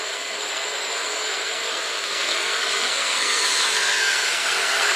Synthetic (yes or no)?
yes